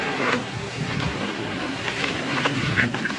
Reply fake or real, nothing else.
fake